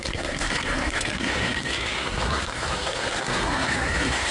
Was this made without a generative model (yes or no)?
no